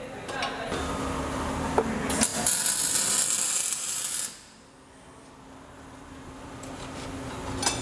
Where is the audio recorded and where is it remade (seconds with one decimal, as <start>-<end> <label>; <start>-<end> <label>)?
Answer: 0.0-7.8 recorded